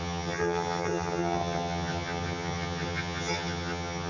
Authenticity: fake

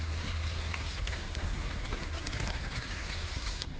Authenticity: fake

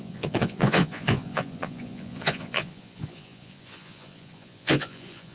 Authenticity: fake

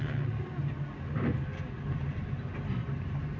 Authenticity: real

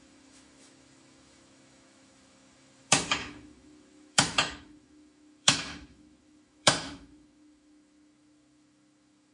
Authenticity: fake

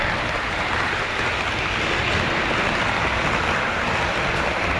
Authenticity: real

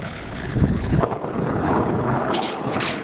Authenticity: fake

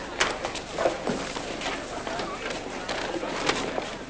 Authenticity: real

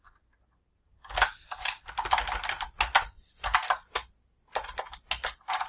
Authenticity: real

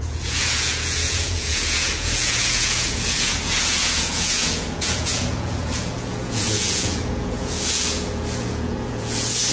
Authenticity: fake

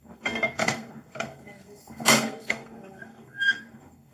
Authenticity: fake